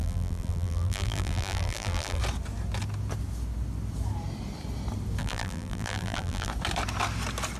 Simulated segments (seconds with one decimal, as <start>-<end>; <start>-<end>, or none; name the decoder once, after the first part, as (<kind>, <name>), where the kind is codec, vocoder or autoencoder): 0.0-2.2 (vocoder, BigVGAN v2); 5.2-6.5

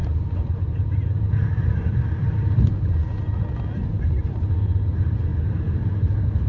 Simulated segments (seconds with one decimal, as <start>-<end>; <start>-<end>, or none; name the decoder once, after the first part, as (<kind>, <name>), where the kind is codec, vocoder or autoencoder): 0.0-2.0 (vocoder, BigVGAN v2); 5.3-5.9

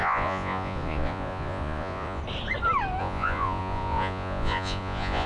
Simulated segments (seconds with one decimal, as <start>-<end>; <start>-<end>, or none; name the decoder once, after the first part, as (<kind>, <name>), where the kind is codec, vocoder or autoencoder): 0.0-2.2 (vocoder, Vocos); 3.0-5.3

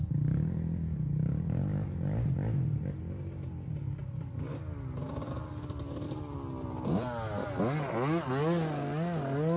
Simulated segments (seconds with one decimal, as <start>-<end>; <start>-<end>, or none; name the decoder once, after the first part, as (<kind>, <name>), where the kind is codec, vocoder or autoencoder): none

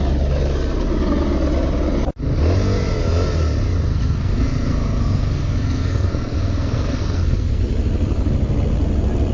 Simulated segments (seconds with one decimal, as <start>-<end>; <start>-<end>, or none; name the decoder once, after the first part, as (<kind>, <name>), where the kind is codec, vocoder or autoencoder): 3.9-7.6 (codec, SNAC)